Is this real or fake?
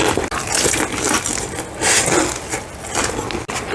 real